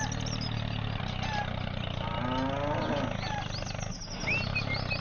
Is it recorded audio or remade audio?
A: recorded